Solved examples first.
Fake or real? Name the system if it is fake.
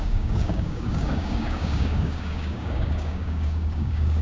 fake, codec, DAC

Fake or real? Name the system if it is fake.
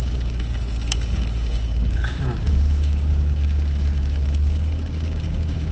fake, codec, DAC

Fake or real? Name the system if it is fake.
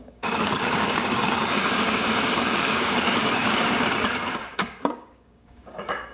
fake, codec, DAC